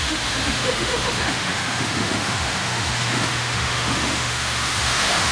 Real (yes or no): no